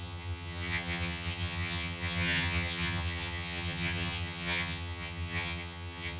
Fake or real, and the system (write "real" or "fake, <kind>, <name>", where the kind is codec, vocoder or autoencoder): fake, vocoder, HiFi-GAN